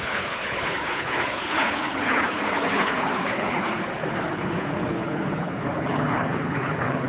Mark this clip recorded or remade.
remade